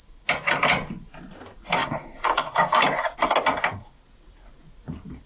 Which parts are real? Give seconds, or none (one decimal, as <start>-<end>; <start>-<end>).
0.0-1.8; 2.8-5.3

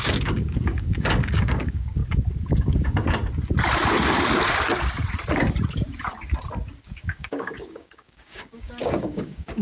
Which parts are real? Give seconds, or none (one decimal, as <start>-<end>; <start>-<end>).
2.0-2.5; 3.2-6.8